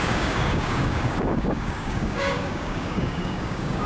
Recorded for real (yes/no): no